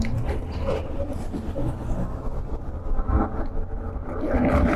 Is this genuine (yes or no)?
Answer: yes